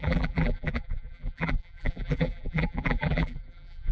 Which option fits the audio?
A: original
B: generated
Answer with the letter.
B